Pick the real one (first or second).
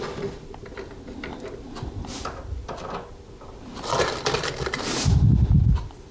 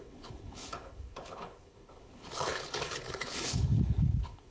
first